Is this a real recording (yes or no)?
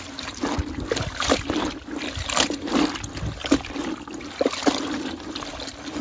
yes